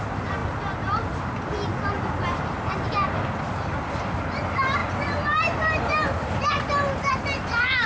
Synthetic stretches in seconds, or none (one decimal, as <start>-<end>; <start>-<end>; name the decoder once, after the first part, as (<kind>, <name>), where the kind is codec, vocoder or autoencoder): none